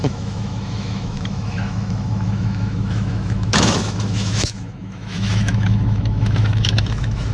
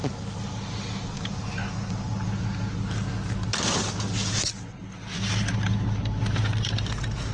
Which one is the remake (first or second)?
first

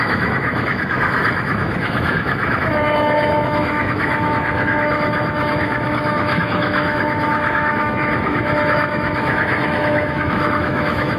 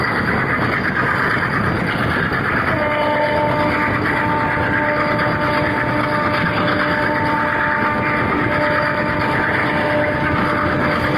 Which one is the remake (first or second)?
first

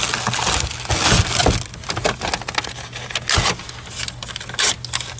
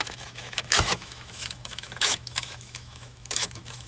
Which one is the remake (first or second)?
second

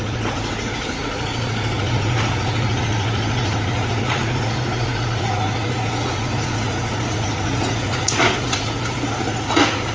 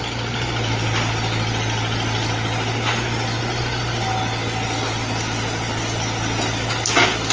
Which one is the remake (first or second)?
first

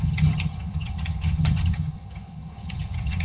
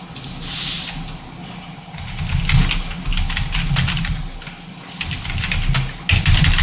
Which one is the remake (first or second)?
first